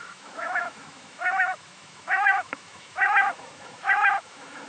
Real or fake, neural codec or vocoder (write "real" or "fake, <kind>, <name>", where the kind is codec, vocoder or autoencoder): fake, autoencoder, DAC-VAE